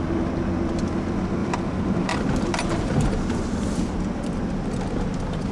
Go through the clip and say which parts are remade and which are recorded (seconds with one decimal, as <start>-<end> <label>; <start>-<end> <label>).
0.0-1.4 recorded; 1.4-3.4 remade; 3.4-5.5 recorded